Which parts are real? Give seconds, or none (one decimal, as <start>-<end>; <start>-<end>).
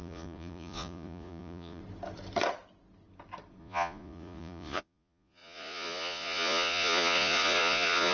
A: 1.8-3.6